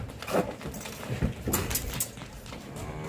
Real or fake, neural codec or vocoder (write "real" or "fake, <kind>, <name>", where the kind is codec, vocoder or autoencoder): real